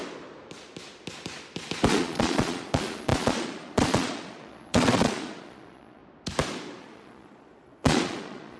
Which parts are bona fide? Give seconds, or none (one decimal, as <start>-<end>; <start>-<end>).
0.0-1.9; 6.0-6.8